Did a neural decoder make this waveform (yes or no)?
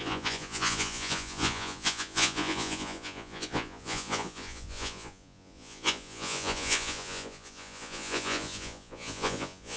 yes